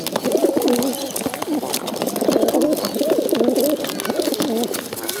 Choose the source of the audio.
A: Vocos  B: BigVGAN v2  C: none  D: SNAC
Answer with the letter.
C